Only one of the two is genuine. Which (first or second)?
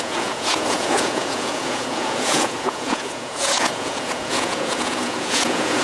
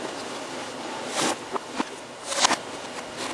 second